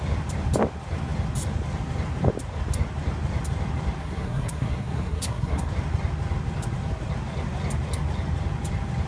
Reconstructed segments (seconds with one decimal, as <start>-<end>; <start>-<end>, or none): 4.0-5.7